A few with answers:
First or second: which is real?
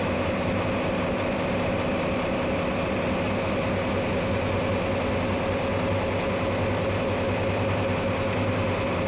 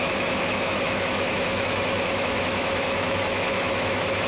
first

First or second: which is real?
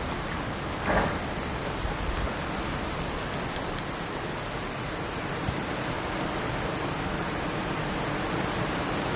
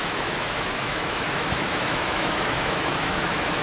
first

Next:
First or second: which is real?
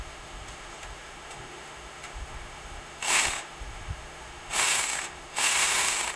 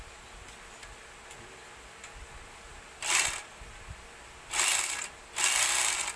second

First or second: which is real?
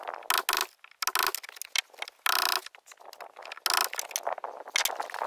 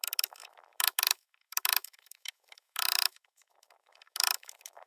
first